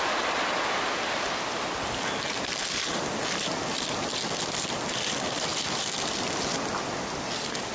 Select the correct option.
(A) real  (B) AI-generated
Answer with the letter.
A